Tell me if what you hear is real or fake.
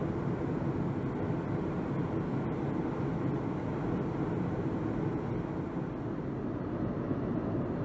real